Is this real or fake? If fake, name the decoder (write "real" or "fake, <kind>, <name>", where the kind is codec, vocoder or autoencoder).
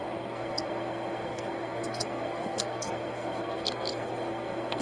fake, codec, SNAC